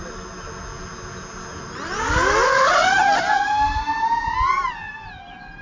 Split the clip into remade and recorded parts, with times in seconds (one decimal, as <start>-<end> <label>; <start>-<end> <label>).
0.0-5.6 recorded

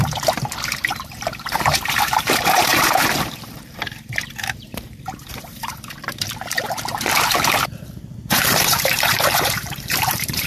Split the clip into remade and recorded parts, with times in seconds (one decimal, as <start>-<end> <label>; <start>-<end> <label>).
0.0-10.5 remade

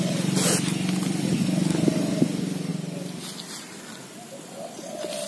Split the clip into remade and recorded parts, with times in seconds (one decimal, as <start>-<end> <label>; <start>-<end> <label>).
0.0-5.3 recorded

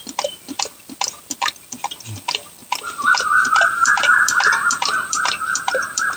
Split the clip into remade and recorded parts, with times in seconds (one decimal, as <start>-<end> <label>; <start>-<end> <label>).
0.0-2.6 remade; 2.6-3.5 recorded; 3.5-6.2 remade

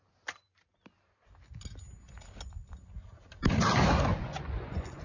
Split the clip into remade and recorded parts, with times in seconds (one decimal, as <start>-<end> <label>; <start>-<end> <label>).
0.0-4.1 recorded; 4.1-5.0 remade

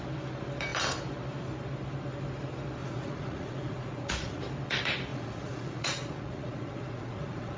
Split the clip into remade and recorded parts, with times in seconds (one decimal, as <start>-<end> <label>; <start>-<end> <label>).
0.0-2.8 recorded; 2.8-4.4 remade; 4.4-5.1 recorded; 5.1-7.6 remade